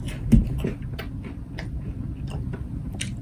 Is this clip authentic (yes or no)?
yes